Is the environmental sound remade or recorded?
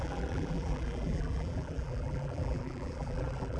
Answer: remade